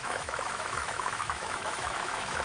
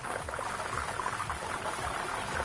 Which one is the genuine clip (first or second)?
second